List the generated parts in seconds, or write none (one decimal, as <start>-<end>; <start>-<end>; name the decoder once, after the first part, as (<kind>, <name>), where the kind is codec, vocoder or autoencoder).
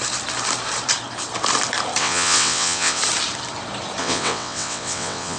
2.0-3.0 (vocoder, WaveNeXt); 4.0-5.4